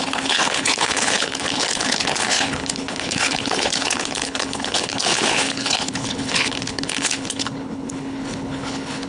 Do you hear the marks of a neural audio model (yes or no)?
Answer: yes